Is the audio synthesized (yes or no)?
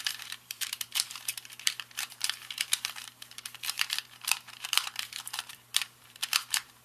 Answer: yes